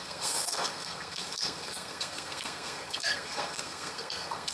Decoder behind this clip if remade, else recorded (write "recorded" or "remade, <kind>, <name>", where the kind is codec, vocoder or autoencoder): remade, codec, SNAC